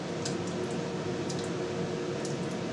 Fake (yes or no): no